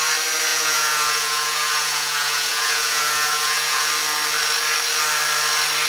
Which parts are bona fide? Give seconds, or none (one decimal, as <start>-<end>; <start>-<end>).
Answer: 0.0-0.5; 3.9-5.9